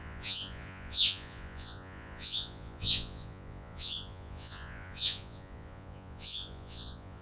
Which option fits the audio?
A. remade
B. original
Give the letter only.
A